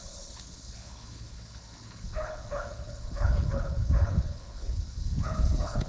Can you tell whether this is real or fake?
fake